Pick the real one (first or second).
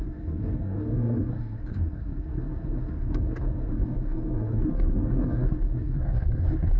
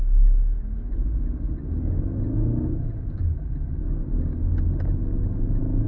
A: second